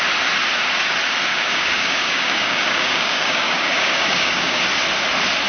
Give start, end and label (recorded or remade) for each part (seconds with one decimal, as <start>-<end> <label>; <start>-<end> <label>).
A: 0.0-1.3 recorded; 1.3-4.6 remade; 4.6-5.5 recorded